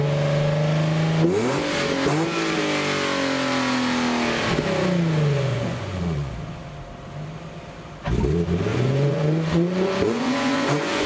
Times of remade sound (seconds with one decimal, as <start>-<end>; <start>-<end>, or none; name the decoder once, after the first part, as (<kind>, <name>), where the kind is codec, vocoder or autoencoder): 5.5-6.3 (vocoder, Vocos); 8.7-11.1